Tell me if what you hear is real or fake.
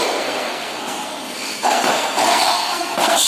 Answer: fake